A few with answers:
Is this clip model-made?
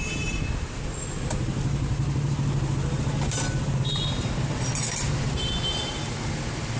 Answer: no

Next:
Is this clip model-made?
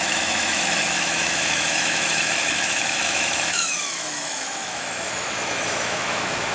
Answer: yes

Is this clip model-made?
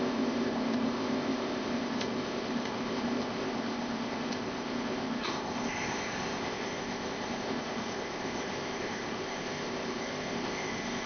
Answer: yes